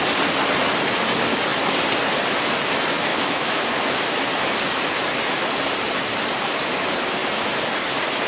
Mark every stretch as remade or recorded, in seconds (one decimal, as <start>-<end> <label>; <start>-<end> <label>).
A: 0.0-3.1 recorded; 3.1-4.3 remade; 4.3-8.3 recorded